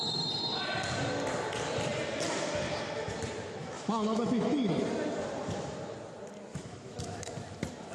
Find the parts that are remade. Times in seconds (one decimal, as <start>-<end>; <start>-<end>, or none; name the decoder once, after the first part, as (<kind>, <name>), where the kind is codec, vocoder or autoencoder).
3.6-4.7 (autoencoder, DAC-VAE); 6.5-7.3